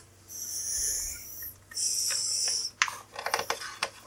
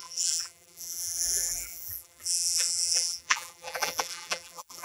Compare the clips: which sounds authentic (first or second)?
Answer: first